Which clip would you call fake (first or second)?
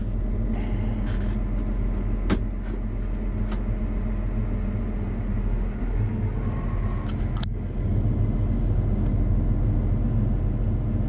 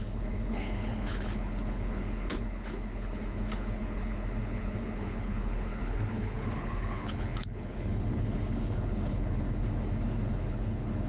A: second